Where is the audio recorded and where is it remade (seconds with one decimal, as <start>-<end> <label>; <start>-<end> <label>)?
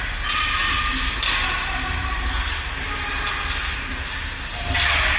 0.0-5.2 recorded